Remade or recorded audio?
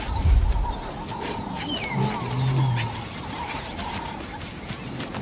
recorded